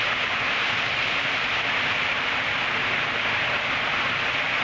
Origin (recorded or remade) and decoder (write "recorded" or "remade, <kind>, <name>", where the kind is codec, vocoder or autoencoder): recorded